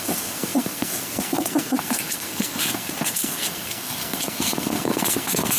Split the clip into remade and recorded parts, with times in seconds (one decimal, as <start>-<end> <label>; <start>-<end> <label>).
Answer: 0.0-5.6 remade